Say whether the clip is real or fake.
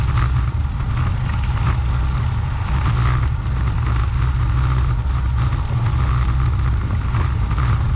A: real